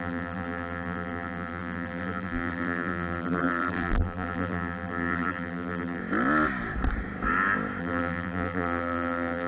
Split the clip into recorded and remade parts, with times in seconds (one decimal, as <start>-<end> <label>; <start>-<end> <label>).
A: 0.0-6.0 remade; 6.0-7.8 recorded; 7.8-9.5 remade